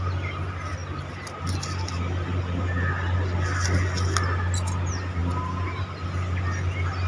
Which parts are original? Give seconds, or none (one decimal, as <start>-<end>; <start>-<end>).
0.0-7.1